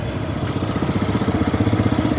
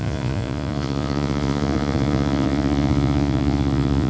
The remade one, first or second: second